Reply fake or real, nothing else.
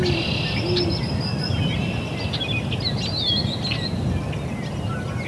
real